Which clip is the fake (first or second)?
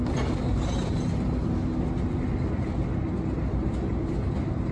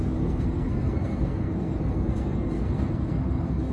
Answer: second